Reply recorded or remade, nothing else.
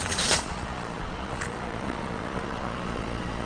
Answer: remade